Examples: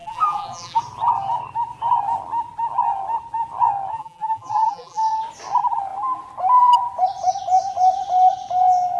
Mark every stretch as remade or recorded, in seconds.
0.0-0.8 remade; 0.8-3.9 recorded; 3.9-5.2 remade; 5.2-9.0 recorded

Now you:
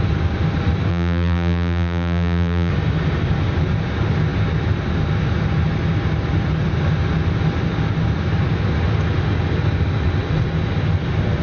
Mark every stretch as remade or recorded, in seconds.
0.0-0.9 recorded; 0.9-2.7 remade; 2.7-11.4 recorded

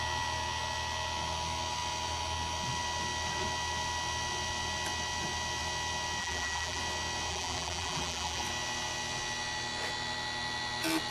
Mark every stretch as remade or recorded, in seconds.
0.0-6.2 recorded; 6.2-6.8 remade; 6.8-7.3 recorded; 7.3-8.4 remade; 8.4-11.1 recorded

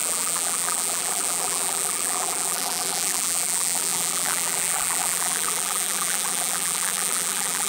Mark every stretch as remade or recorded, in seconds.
0.0-7.7 remade

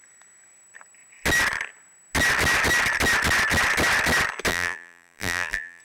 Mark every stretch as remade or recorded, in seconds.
0.0-4.5 recorded; 4.5-5.8 remade

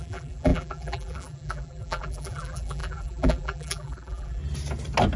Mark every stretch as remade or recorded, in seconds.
0.0-4.4 remade; 4.4-5.2 recorded